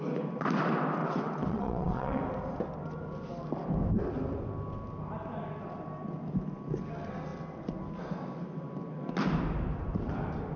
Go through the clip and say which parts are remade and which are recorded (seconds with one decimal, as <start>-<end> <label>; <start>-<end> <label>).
0.0-1.0 recorded; 1.0-2.2 remade; 2.2-10.6 recorded